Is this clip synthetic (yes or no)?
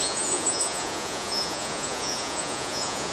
yes